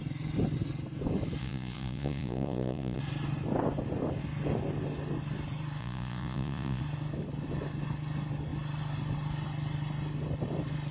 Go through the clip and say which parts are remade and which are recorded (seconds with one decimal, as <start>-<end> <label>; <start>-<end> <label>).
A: 0.0-1.4 recorded; 1.4-3.0 remade; 3.0-5.8 recorded; 5.8-6.8 remade; 6.8-10.9 recorded